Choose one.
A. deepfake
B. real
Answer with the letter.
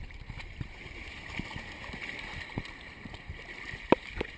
B